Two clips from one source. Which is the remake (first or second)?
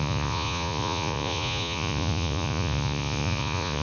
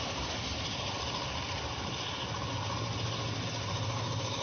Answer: first